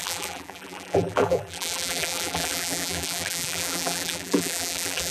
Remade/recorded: remade